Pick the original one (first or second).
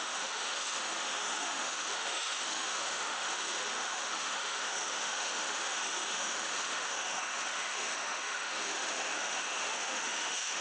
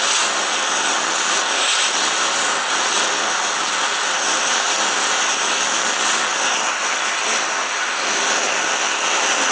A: second